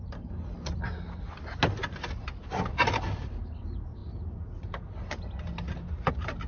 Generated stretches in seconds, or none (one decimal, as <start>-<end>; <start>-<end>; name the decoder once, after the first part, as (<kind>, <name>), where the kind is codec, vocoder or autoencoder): none